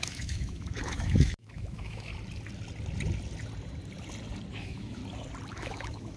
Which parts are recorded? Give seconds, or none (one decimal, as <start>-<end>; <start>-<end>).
2.1-4.5; 5.0-5.5